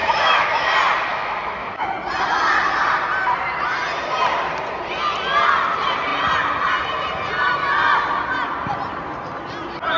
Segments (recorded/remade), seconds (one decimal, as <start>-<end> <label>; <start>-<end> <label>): 0.0-0.7 remade; 0.7-1.1 recorded; 1.1-1.9 remade; 1.9-10.0 recorded